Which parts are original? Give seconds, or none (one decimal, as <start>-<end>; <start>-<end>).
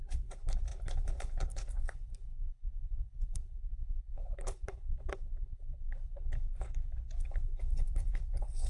none